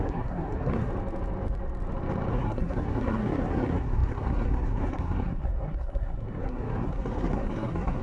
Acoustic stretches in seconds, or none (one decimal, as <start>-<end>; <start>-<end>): 0.9-2.3